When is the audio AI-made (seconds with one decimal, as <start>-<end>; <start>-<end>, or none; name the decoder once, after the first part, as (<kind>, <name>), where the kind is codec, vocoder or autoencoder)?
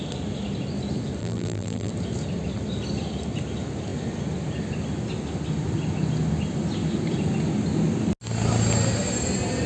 1.2-1.9 (vocoder, BigVGAN v2)